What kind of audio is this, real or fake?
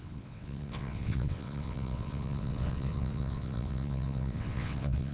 fake